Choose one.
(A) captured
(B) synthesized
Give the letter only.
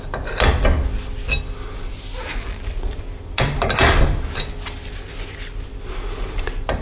A